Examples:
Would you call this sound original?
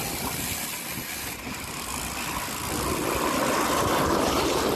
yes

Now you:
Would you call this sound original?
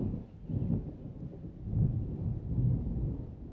yes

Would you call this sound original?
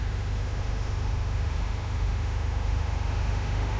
no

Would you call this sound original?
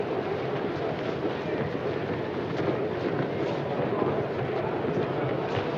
yes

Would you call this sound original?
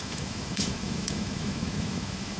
no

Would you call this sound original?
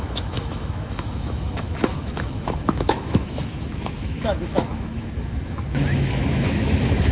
no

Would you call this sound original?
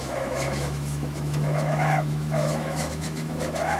no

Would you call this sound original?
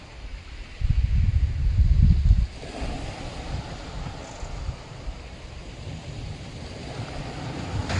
yes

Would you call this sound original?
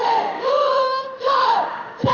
no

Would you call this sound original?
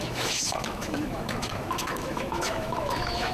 no